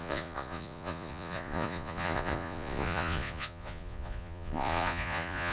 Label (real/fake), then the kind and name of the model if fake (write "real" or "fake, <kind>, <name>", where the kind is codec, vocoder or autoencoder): fake, vocoder, Vocos